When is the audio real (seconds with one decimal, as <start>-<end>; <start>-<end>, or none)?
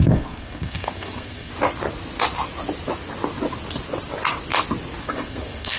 1.5-5.0